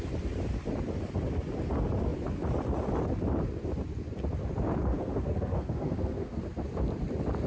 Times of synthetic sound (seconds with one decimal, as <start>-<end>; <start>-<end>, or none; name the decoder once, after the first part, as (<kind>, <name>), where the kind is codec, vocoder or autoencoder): 4.9-6.4 (codec, SNAC)